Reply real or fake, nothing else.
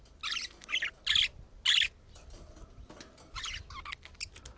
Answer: real